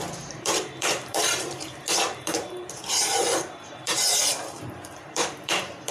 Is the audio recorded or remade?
remade